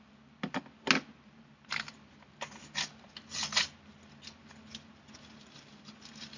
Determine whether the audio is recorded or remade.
recorded